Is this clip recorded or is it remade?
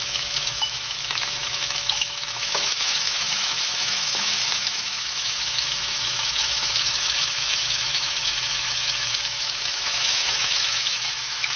remade